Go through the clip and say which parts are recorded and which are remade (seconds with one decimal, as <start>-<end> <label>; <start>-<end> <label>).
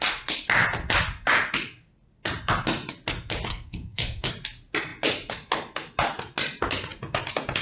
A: 0.0-3.5 recorded; 3.5-4.3 remade; 4.3-7.6 recorded